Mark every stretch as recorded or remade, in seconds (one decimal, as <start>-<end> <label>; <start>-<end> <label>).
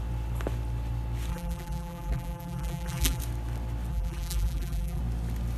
0.0-1.3 recorded; 1.3-3.2 remade; 3.2-3.9 recorded; 3.9-5.0 remade; 5.0-5.6 recorded